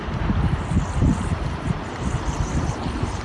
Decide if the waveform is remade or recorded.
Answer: recorded